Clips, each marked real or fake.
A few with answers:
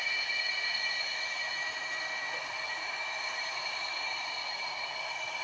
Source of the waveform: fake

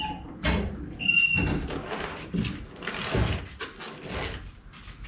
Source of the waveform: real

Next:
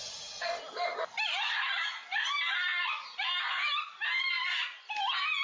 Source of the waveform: real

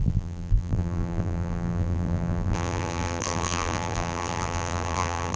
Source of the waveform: fake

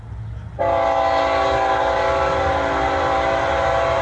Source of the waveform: real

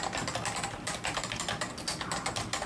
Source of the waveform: real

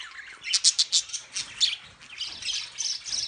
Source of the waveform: real